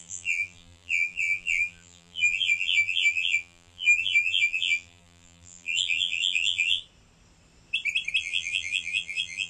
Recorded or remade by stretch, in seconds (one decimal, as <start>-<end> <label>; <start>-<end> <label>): 0.0-6.8 remade; 6.8-8.2 recorded; 8.2-9.5 remade

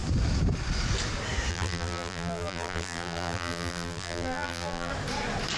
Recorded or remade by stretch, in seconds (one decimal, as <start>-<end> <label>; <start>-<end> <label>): 0.0-1.5 recorded; 1.5-4.9 remade; 4.9-5.6 recorded

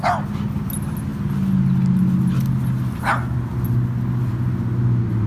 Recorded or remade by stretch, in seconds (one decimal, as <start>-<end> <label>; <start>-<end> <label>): 0.0-5.3 recorded

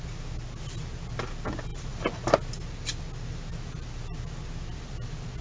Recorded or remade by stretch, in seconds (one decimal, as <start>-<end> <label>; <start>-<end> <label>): 0.0-5.4 recorded

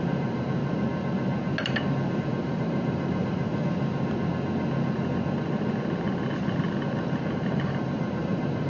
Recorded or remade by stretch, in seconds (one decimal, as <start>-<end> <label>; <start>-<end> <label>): 0.0-0.6 remade; 0.6-2.2 recorded; 2.2-3.5 remade; 3.5-7.3 recorded; 7.3-8.7 remade

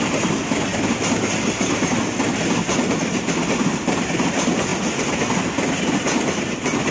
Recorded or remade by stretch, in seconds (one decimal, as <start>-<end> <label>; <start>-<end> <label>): 0.0-6.9 recorded

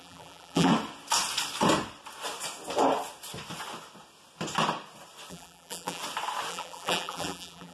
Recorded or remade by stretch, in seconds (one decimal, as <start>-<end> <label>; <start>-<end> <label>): 0.0-0.7 remade; 0.7-5.3 recorded; 5.3-6.0 remade; 6.0-6.5 recorded; 6.5-7.7 remade